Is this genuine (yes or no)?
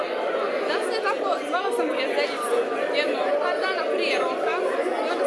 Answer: yes